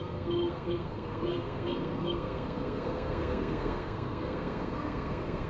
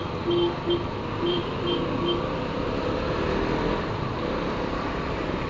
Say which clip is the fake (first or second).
first